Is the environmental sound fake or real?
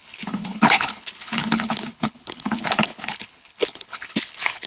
fake